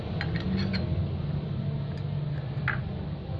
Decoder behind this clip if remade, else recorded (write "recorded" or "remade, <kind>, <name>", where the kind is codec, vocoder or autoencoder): recorded